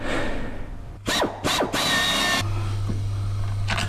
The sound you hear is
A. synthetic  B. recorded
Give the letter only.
B